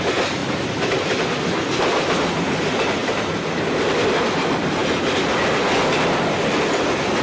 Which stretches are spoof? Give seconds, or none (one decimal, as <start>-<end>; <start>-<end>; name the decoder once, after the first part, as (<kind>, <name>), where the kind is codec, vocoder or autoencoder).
0.4-2.6 (vocoder, BigVGAN v2); 3.0-4.3